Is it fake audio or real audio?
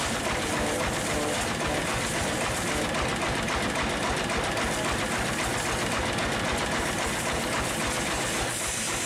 real